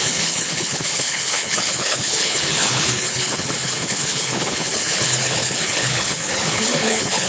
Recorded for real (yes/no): no